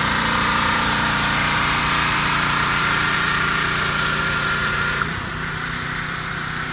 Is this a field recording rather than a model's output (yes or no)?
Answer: no